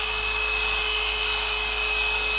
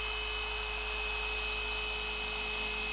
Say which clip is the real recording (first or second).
second